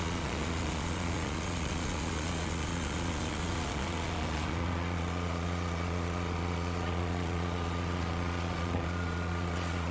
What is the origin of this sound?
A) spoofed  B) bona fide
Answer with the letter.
A